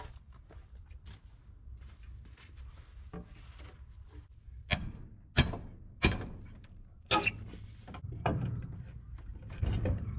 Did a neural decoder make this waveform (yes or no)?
no